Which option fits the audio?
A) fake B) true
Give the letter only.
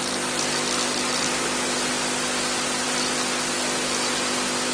B